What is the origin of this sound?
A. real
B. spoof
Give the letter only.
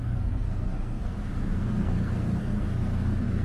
B